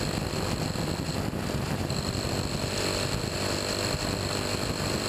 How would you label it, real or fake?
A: real